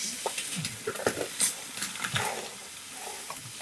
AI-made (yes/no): no